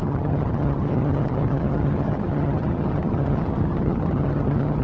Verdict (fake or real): fake